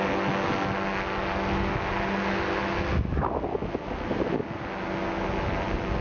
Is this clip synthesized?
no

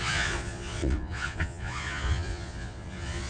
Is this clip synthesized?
yes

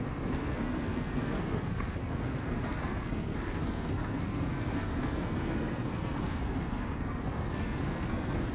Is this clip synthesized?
yes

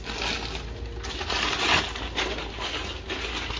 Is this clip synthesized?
no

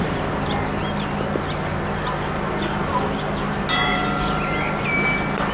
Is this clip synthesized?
no